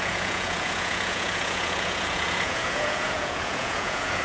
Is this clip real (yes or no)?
no